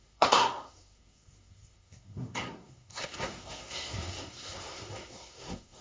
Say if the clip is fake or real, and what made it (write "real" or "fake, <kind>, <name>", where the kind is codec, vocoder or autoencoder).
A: fake, codec, SNAC